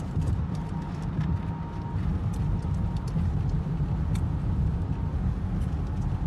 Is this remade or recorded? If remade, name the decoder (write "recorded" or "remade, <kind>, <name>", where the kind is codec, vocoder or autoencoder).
recorded